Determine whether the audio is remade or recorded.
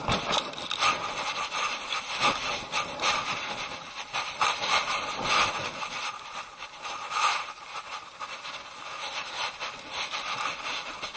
recorded